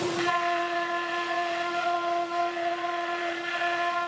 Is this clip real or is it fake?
fake